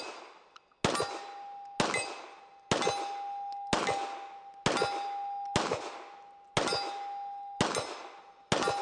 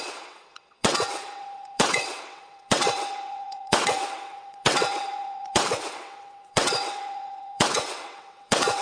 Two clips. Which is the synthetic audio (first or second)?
second